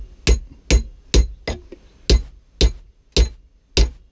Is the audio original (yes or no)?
yes